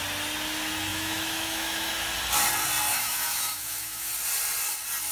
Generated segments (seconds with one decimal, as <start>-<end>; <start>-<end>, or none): 0.9-1.9; 2.9-4.1